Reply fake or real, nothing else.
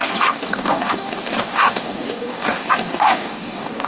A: fake